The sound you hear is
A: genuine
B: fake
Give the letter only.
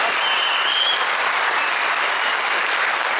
A